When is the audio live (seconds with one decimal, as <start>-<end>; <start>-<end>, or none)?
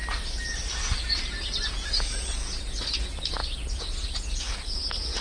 0.0-1.7